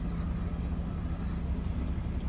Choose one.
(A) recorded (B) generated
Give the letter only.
A